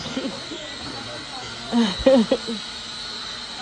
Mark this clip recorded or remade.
recorded